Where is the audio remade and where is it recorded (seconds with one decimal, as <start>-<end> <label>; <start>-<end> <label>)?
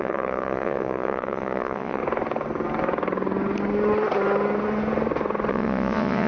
0.0-2.0 remade; 2.0-5.5 recorded; 5.5-6.3 remade